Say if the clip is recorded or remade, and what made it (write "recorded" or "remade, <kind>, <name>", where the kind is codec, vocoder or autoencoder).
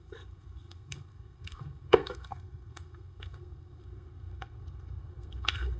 remade, codec, SNAC